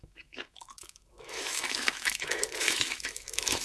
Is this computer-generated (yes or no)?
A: yes